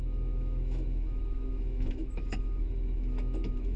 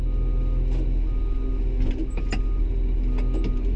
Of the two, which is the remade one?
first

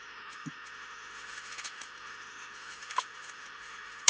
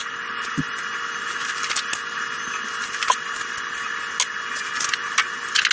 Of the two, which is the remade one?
first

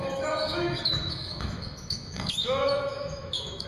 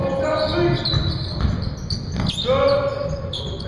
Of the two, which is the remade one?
first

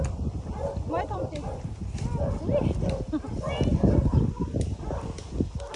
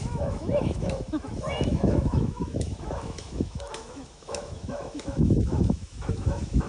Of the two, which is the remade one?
second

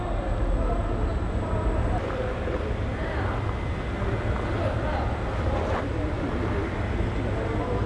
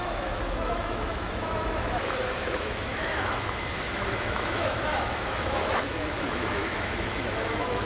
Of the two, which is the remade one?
second